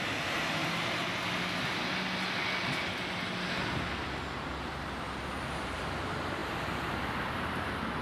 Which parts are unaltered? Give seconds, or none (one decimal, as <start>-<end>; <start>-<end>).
0.6-5.4